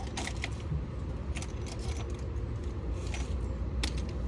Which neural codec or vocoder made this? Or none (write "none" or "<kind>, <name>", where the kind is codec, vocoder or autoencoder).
none